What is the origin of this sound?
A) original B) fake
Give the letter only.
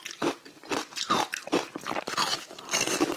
B